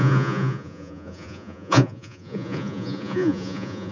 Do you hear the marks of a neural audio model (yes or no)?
yes